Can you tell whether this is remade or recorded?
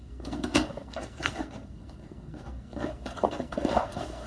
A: remade